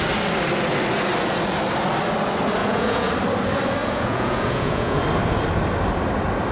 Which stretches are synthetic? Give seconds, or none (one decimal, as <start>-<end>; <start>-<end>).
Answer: 2.6-3.1; 3.8-5.0